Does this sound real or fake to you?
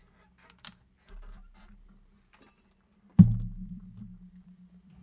fake